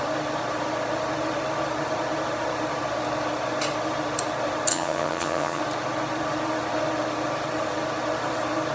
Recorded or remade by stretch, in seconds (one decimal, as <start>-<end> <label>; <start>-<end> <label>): 0.0-4.7 recorded; 4.7-5.6 remade; 5.6-8.7 recorded